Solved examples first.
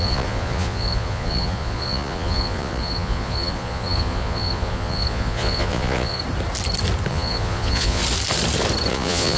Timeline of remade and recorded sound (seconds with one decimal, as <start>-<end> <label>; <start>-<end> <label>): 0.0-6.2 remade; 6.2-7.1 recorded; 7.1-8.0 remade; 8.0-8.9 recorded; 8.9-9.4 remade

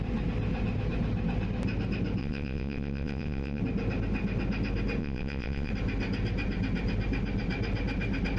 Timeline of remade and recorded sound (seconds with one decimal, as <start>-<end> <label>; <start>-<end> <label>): 0.0-2.2 recorded; 2.2-3.6 remade; 3.6-5.0 recorded; 5.0-5.7 remade; 5.7-8.4 recorded

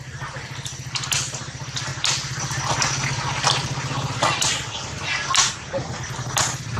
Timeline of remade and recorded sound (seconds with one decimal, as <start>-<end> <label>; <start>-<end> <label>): 0.0-6.8 recorded

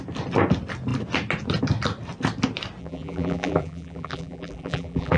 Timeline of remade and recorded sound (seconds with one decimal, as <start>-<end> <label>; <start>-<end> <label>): 0.0-2.8 recorded; 2.8-5.2 remade

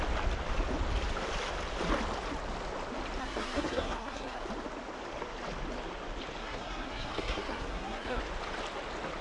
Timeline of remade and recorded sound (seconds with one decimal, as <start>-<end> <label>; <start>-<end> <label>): 0.0-3.2 recorded; 3.2-4.4 remade; 4.4-6.4 recorded; 6.4-8.2 remade; 8.2-9.2 recorded